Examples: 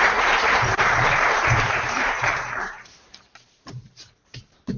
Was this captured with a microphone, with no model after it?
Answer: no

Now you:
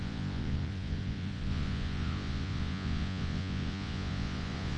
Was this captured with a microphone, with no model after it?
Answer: no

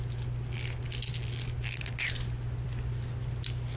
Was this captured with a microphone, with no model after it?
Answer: yes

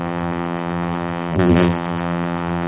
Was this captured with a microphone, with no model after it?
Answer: no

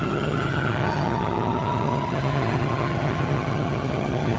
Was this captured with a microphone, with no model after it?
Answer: no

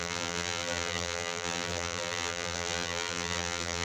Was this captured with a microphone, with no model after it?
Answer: no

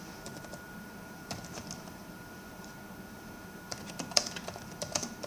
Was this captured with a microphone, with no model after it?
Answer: no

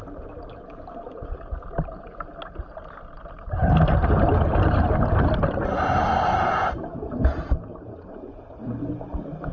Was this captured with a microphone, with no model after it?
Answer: yes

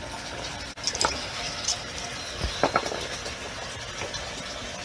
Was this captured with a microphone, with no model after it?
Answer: yes